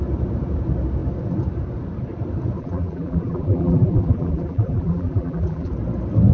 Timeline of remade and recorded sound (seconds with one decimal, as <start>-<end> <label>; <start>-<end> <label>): 0.0-2.6 recorded; 2.6-5.7 remade; 5.7-6.3 recorded